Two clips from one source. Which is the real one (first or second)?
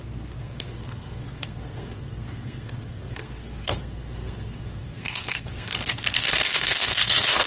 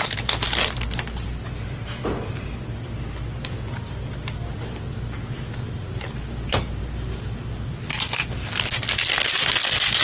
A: second